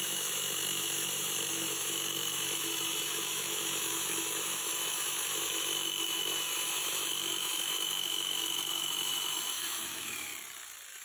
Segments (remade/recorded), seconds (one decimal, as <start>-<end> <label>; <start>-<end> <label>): 0.0-10.3 remade; 10.3-11.0 recorded

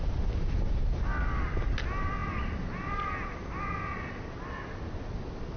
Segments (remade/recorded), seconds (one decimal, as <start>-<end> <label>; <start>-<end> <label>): 0.0-5.6 recorded

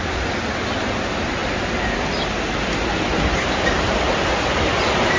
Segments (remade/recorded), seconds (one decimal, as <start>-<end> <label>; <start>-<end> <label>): 0.0-5.2 recorded